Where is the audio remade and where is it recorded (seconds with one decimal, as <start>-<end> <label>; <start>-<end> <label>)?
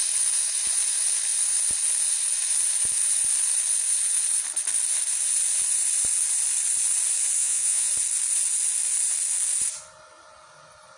0.0-7.4 recorded; 7.4-7.9 remade; 7.9-11.0 recorded